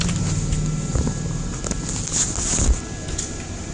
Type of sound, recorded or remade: recorded